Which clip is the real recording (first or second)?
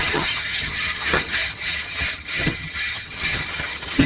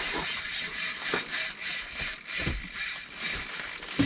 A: second